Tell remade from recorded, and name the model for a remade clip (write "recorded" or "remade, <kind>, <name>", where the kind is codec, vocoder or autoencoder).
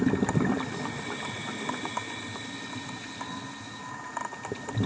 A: recorded